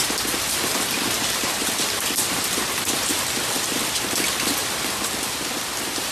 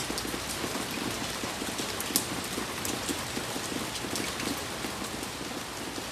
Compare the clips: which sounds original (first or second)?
second